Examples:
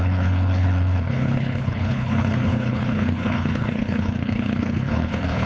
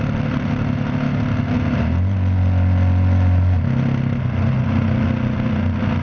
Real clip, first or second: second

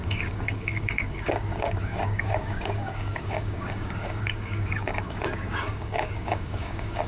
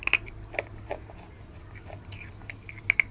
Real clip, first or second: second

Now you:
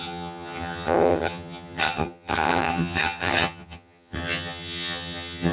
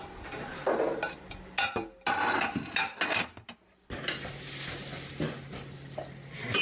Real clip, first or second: second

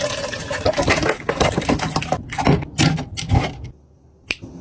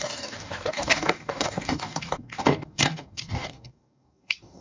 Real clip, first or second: first